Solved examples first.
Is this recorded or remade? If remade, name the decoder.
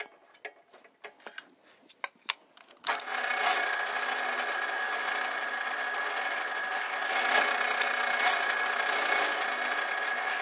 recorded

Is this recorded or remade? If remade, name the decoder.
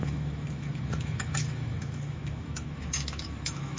remade, autoencoder, DAC-VAE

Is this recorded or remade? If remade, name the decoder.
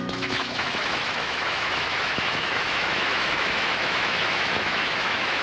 remade, autoencoder, DAC-VAE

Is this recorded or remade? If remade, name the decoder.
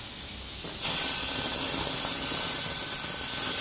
recorded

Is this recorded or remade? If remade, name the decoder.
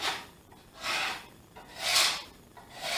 recorded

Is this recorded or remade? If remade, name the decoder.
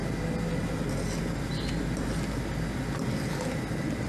recorded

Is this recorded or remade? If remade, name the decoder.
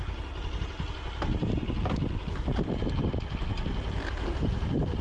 recorded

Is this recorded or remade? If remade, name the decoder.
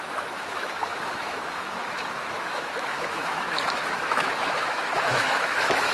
remade, autoencoder, DAC-VAE